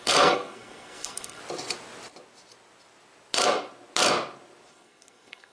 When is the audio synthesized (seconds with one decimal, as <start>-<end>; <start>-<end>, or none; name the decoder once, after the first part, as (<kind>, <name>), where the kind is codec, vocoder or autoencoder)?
0.0-1.4 (codec, SNAC); 4.7-5.5